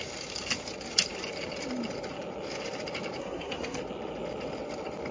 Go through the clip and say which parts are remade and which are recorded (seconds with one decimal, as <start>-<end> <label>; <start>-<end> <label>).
0.0-3.2 recorded; 3.2-3.8 remade; 3.8-5.1 recorded